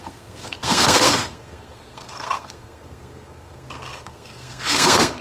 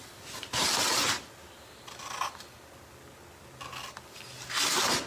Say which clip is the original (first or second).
second